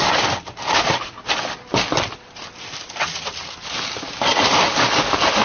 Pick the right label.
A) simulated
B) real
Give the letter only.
B